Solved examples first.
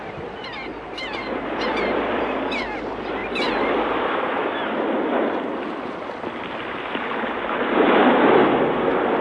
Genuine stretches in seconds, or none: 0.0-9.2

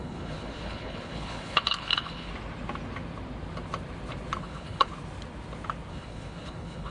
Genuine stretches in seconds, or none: 2.3-4.4; 4.9-5.9